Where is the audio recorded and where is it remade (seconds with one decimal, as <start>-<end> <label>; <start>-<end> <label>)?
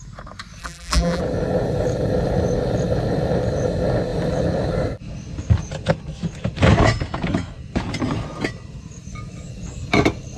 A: 0.0-0.6 recorded; 0.6-1.2 remade; 1.2-10.4 recorded